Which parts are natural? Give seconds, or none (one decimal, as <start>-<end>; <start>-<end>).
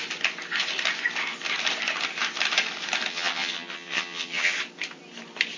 0.0-3.1; 4.5-5.6